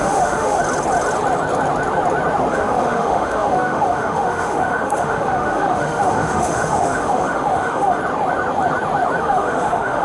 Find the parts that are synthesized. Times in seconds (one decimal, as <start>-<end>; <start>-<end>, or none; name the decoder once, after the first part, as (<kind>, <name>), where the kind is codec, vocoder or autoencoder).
0.0-0.6 (autoencoder, DAC-VAE); 2.5-8.0; 9.2-10.0